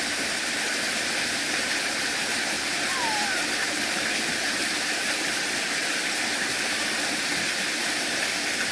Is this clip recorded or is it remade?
recorded